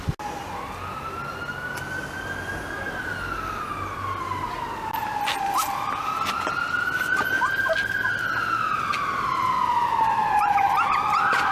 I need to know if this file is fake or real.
real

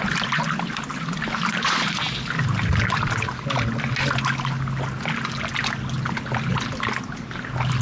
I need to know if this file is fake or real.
real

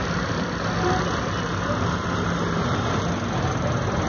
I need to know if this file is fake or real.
real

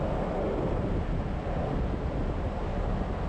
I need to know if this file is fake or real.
real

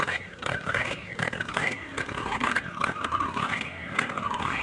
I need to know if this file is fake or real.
fake